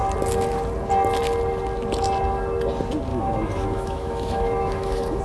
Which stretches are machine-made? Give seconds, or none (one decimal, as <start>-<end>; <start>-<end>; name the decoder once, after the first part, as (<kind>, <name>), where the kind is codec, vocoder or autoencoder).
3.1-5.2 (autoencoder, DAC-VAE)